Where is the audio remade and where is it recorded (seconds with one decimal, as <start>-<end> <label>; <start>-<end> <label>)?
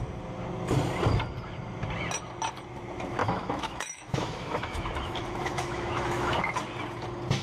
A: 0.0-3.2 recorded; 3.2-6.4 remade; 6.4-7.4 recorded